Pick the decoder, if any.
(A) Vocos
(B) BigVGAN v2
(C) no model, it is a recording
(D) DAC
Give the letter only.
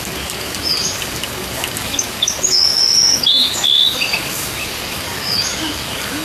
D